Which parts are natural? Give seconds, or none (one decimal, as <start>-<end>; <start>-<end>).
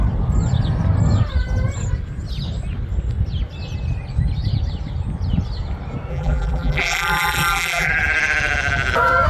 0.0-6.1; 7.9-9.3